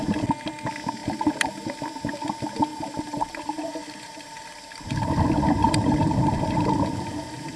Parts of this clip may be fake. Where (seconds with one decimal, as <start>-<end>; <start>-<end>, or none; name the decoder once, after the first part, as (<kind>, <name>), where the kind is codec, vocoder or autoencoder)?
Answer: 1.0-1.7 (vocoder, BigVGAN v2); 2.7-4.6; 5.6-6.4